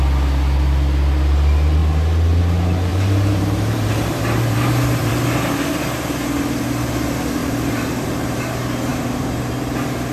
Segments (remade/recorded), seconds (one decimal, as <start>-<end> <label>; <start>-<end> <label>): 0.0-2.9 recorded; 2.9-5.1 remade; 5.1-7.4 recorded; 7.4-8.4 remade; 8.4-8.9 recorded; 8.9-9.5 remade; 9.5-10.1 recorded